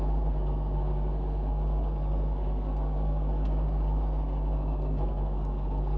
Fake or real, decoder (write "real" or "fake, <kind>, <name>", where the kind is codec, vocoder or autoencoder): fake, codec, SNAC